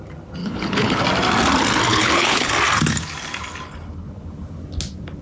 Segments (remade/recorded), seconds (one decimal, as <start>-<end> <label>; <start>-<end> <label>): 0.0-0.4 recorded; 0.4-1.0 remade; 1.0-1.9 recorded; 1.9-2.5 remade; 2.5-5.2 recorded